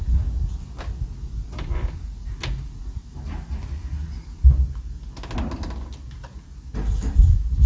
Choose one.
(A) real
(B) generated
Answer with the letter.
A